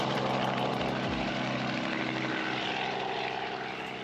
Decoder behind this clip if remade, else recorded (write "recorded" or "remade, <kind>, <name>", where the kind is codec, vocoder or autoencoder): recorded